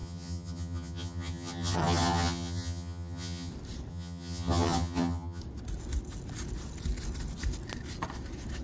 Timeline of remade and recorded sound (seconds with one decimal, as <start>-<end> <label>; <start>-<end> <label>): 0.0-3.5 remade; 3.5-3.9 recorded; 3.9-5.4 remade; 5.4-8.6 recorded